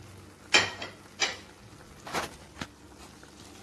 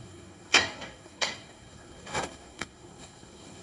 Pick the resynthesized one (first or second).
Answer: second